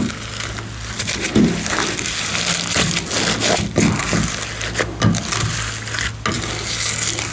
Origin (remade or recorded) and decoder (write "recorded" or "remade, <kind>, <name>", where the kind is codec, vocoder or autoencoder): recorded